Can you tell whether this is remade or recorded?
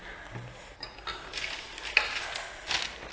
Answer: recorded